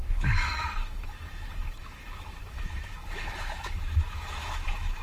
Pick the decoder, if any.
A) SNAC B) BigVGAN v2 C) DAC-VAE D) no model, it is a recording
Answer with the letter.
C